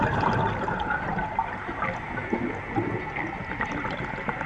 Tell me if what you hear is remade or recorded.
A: recorded